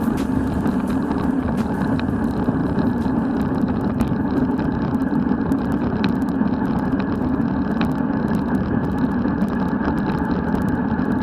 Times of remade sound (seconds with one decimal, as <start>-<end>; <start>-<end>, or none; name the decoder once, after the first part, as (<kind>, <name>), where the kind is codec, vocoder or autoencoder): 2.6-3.7 (vocoder, BigVGAN v2)